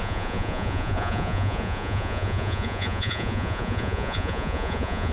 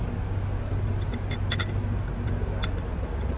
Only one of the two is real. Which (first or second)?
second